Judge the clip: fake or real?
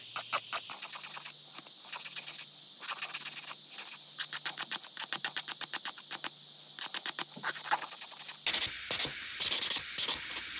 real